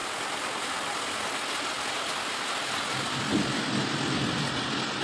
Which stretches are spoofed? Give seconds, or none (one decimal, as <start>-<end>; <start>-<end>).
none

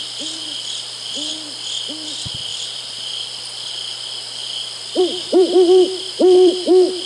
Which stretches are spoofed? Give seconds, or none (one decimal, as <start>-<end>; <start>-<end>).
2.5-3.7; 4.4-7.1

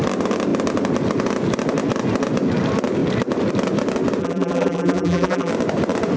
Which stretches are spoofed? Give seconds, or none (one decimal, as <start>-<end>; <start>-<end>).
4.2-5.5

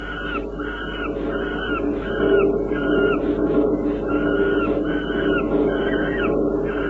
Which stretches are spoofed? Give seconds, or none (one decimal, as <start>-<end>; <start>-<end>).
none

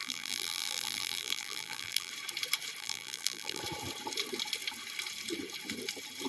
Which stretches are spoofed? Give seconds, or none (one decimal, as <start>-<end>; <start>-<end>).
0.0-2.1; 2.8-3.6